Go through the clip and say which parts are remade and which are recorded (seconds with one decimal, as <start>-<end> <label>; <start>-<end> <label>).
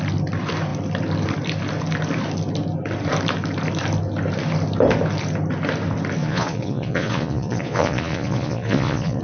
0.0-6.2 recorded; 6.2-9.2 remade